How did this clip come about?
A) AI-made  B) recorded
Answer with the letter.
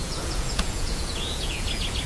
A